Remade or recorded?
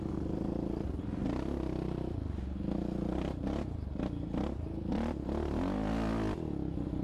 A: recorded